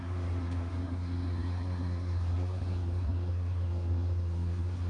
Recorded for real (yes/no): no